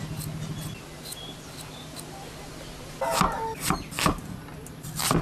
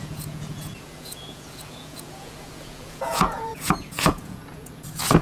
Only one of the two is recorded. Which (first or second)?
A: first